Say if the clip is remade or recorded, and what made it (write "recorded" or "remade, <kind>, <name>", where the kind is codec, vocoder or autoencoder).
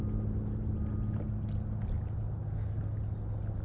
recorded